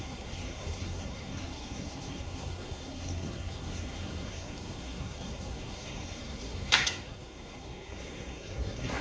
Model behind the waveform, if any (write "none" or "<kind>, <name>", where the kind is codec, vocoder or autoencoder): codec, SNAC